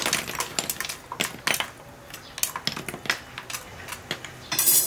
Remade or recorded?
recorded